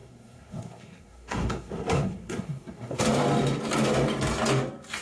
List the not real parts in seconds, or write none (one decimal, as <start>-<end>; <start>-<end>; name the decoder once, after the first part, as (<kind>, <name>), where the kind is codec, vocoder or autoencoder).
0.0-3.0 (codec, SNAC)